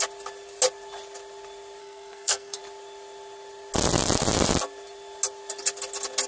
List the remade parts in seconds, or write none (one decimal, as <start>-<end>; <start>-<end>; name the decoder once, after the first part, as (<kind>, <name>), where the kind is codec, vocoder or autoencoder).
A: 1.8-2.6 (codec, SNAC)